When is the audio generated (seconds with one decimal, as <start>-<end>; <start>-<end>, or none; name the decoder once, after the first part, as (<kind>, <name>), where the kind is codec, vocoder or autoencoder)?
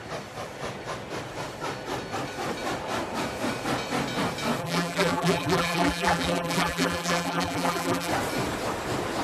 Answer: 4.6-8.1 (vocoder, BigVGAN v2)